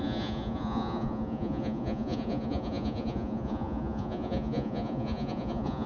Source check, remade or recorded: remade